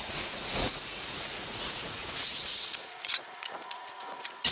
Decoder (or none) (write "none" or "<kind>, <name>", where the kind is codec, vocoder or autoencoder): vocoder, Vocos